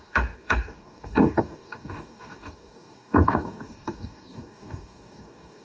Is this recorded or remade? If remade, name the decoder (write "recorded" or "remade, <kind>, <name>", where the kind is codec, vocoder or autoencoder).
remade, codec, DAC